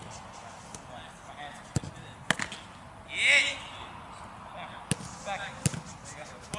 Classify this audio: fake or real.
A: real